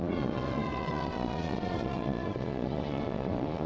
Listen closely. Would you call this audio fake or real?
fake